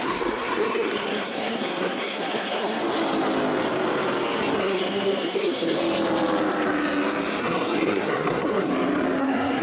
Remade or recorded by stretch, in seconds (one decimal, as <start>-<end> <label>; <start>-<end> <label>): 0.0-2.8 remade; 2.8-4.6 recorded; 4.6-5.8 remade; 5.8-7.4 recorded; 7.4-8.7 remade; 8.7-9.2 recorded; 9.2-9.6 remade